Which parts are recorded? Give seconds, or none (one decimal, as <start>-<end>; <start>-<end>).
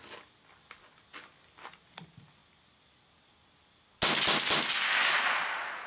0.0-5.9